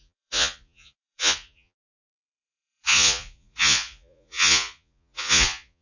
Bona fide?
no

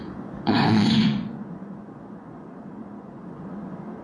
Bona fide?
no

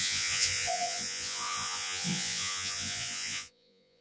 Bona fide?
no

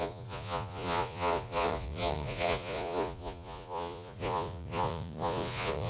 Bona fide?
no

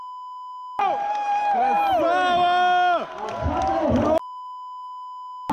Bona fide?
yes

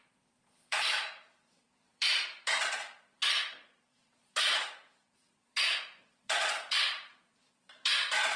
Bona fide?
no